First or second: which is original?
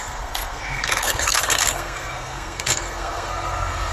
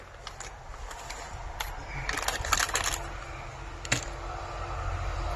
second